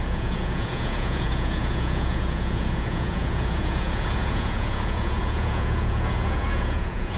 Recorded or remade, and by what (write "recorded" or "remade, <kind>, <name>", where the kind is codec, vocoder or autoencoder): remade, vocoder, Vocos